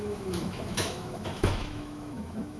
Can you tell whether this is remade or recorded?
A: remade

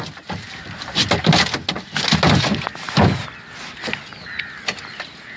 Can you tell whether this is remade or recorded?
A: recorded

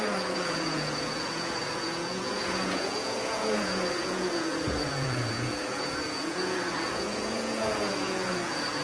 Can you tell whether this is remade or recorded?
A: remade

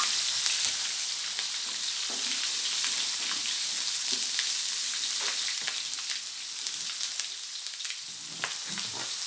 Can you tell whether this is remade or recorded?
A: recorded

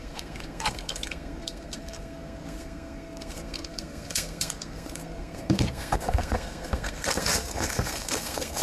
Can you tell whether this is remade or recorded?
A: remade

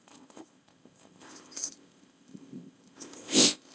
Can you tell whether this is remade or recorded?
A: remade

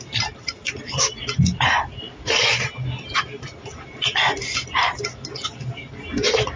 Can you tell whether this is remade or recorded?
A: recorded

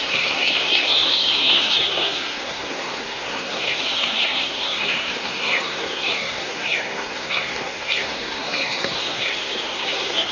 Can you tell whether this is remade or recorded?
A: remade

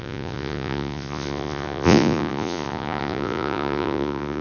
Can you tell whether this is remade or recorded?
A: remade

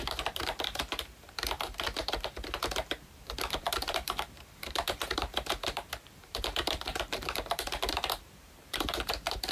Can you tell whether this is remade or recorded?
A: remade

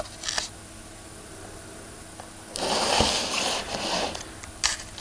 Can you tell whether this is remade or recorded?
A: recorded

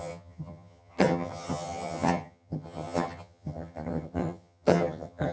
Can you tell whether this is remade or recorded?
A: remade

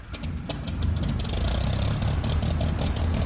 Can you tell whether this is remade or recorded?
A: recorded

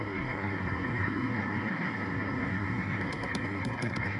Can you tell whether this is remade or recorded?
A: remade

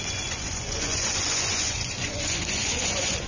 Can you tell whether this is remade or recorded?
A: remade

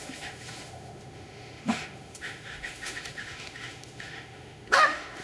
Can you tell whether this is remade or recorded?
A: remade